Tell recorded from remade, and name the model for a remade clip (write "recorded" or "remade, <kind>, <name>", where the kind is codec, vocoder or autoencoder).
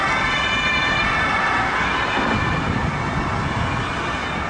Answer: recorded